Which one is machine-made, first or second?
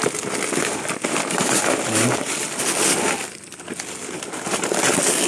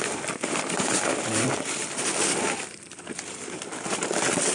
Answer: second